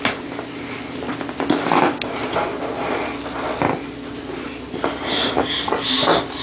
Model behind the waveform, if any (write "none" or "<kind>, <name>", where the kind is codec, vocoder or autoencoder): none